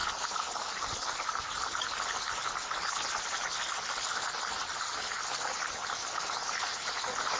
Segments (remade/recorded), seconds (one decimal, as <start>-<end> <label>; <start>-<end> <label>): 0.0-7.4 recorded